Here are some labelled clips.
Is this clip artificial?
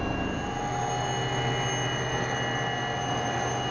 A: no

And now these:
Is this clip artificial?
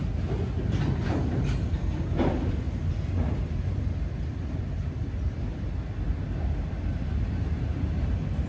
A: no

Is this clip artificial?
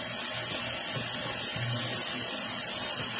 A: no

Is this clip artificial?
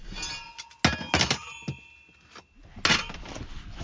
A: no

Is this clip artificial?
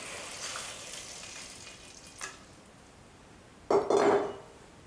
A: no